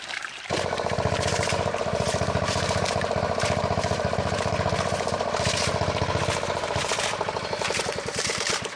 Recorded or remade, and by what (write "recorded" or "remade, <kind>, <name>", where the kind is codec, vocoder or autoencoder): remade, vocoder, BigVGAN v2